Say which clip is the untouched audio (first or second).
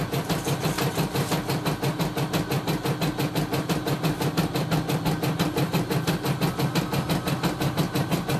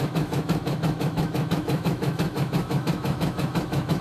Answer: first